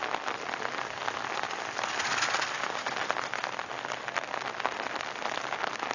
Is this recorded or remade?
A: recorded